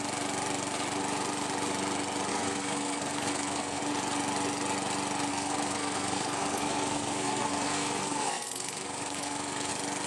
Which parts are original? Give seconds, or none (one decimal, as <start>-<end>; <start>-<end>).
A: 0.0-2.3; 3.8-5.3; 9.7-10.1